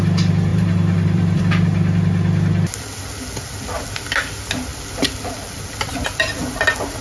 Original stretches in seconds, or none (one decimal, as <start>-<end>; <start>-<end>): 0.0-0.5; 1.4-7.0